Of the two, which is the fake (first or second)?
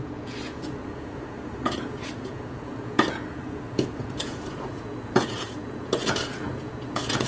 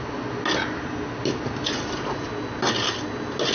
first